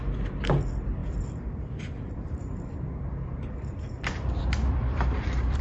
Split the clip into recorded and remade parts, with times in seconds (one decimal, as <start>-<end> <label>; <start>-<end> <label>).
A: 0.0-5.6 remade